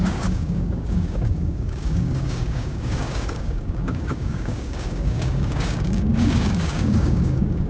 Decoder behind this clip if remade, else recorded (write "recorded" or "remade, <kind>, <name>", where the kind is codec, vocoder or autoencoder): remade, codec, DAC